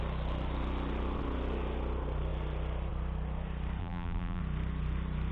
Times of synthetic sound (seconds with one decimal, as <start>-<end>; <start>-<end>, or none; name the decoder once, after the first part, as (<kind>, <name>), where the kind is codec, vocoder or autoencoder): 3.8-4.4 (vocoder, BigVGAN v2)